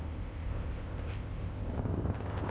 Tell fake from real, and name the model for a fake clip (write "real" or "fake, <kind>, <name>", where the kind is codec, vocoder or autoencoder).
fake, codec, ZipCodec